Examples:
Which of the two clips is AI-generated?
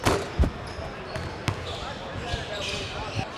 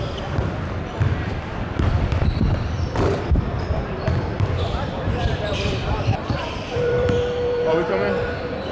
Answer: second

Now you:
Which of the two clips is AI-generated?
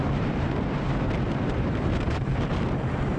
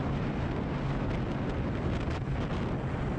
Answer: first